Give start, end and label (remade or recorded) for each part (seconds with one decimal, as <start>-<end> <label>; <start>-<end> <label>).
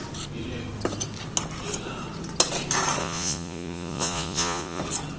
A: 0.0-3.0 recorded; 3.0-4.8 remade; 4.8-5.2 recorded